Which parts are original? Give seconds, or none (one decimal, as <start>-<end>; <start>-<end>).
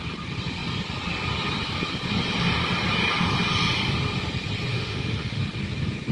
0.0-4.7; 5.4-6.1